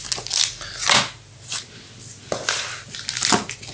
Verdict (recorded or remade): recorded